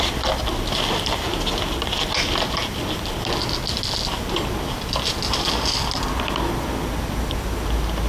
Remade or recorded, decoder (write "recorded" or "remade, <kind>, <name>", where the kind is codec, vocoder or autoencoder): recorded